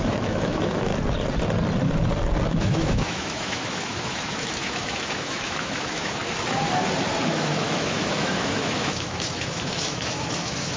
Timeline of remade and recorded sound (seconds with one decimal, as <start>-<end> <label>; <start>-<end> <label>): 0.0-0.9 remade; 0.9-2.5 recorded; 2.5-6.2 remade; 6.2-7.3 recorded; 7.3-10.8 remade